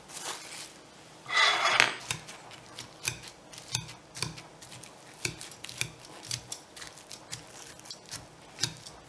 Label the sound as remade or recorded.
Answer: recorded